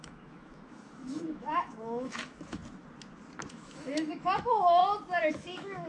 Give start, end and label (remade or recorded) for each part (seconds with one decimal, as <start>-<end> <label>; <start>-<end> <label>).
0.0-2.6 remade; 2.6-3.5 recorded; 3.5-4.8 remade; 4.8-5.3 recorded; 5.3-5.9 remade

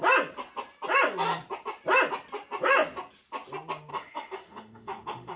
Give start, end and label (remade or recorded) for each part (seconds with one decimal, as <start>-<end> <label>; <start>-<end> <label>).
0.0-3.9 recorded; 3.9-5.4 remade

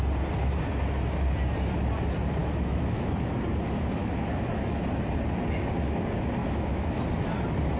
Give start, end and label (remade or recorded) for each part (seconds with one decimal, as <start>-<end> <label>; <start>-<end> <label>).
0.0-2.4 recorded; 2.4-3.3 remade; 3.3-4.0 recorded; 4.0-4.8 remade; 4.8-6.4 recorded; 6.4-7.0 remade; 7.0-7.8 recorded

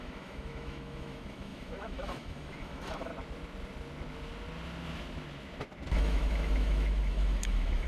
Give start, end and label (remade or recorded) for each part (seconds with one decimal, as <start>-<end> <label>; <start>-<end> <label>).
0.0-3.1 remade; 3.1-5.9 recorded; 5.9-7.9 remade

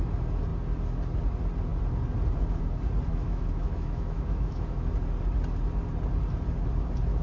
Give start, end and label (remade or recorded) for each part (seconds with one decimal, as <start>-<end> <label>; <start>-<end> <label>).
0.0-3.1 recorded; 3.1-4.9 remade; 4.9-7.2 recorded

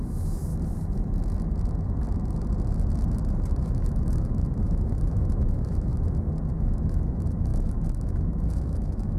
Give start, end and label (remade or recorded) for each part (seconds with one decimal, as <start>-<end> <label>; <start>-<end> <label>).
0.0-0.5 remade; 0.5-3.6 recorded; 3.6-5.9 remade; 5.9-6.5 recorded; 6.5-9.2 remade